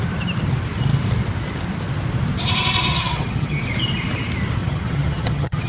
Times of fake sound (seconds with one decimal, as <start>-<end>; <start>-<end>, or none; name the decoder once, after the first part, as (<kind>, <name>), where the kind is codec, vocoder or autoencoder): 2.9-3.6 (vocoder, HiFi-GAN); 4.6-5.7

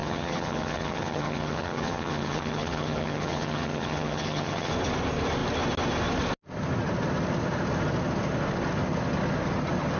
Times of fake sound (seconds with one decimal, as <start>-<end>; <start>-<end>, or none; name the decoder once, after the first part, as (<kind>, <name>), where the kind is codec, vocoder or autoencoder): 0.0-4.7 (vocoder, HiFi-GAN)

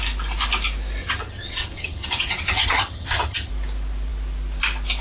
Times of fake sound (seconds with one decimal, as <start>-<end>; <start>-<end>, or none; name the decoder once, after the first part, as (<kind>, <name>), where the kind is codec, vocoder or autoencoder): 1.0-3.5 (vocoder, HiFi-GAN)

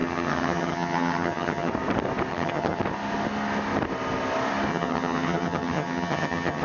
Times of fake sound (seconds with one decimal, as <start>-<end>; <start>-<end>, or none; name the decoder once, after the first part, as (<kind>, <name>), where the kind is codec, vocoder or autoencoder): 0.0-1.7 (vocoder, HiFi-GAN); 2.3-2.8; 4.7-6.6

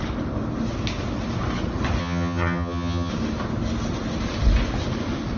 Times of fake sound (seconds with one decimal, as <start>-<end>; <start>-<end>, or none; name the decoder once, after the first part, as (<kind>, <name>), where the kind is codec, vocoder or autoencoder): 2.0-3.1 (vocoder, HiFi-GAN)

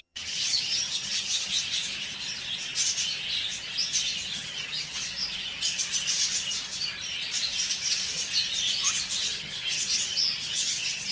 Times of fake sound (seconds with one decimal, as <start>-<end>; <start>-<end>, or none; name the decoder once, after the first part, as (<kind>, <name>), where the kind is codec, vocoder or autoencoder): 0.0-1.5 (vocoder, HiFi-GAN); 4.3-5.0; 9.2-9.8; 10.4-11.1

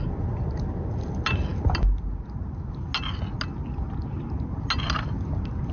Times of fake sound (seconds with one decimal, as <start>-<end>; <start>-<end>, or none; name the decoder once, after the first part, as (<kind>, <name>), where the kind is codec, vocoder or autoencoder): none

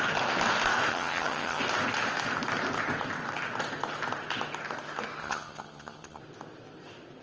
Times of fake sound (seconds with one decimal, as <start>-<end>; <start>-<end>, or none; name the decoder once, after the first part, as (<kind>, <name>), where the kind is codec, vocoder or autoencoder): 0.9-1.6 (vocoder, HiFi-GAN); 5.2-6.2